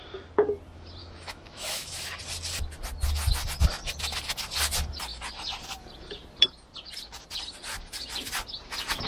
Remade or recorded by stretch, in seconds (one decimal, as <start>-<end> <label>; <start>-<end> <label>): 0.0-1.0 recorded; 1.0-2.0 remade; 2.0-9.1 recorded